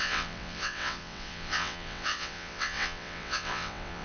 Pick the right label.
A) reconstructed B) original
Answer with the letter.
A